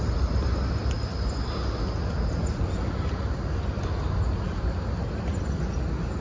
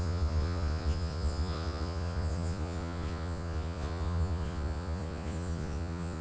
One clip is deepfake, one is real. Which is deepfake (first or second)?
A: second